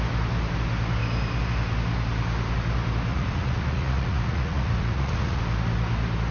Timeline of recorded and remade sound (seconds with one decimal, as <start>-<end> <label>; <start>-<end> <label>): 0.0-3.1 recorded; 3.1-5.4 remade; 5.4-6.3 recorded